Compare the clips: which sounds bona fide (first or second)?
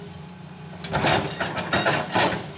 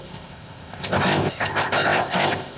first